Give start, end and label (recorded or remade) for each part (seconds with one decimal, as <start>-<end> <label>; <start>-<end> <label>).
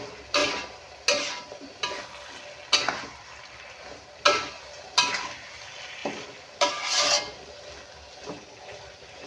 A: 0.0-0.4 remade; 0.4-4.2 recorded; 4.2-9.3 remade